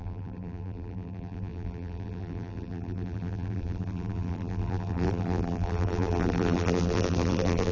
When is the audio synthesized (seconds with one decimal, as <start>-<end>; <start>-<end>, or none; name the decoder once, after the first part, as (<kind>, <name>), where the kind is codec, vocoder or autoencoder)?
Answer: 0.0-7.7 (vocoder, BigVGAN v2)